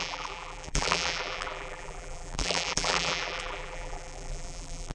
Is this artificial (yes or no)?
yes